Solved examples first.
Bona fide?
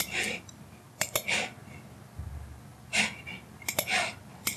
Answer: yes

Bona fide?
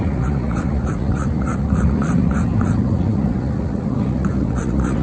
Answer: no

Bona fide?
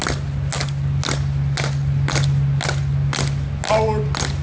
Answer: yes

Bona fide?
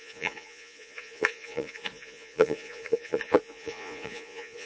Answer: no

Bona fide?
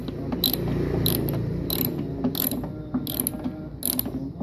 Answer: yes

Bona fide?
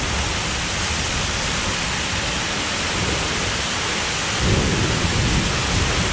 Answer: yes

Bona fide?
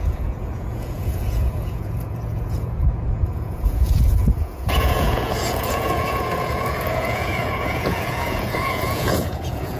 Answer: no